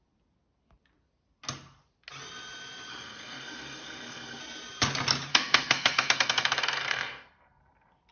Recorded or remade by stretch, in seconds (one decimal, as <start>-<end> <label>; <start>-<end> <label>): 0.0-2.9 recorded; 2.9-4.4 remade; 4.4-5.3 recorded; 5.3-7.6 remade; 7.6-8.1 recorded